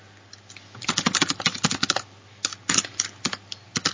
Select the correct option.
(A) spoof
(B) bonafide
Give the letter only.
B